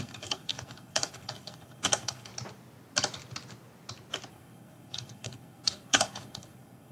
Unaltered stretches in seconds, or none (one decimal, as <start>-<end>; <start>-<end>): 2.3-4.3